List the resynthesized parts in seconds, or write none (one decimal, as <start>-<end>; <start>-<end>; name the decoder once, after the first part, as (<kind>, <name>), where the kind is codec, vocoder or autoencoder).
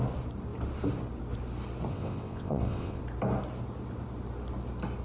1.9-3.0 (vocoder, WaveNeXt)